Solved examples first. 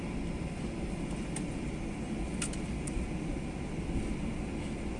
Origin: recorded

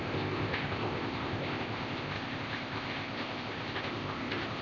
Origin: remade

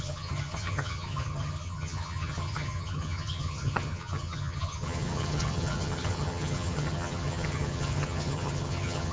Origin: remade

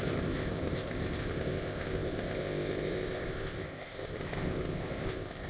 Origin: remade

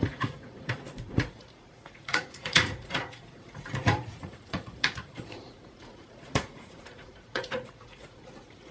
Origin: remade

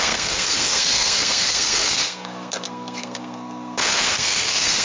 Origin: remade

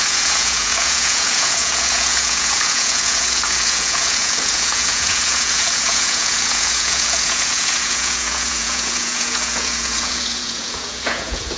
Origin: remade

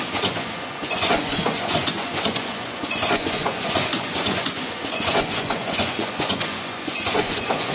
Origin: remade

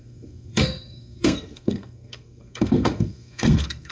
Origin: remade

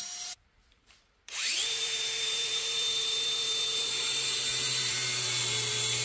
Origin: remade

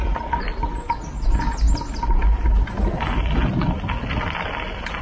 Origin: recorded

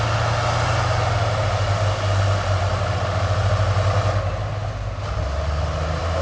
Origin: recorded